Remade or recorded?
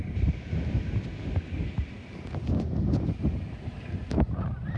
recorded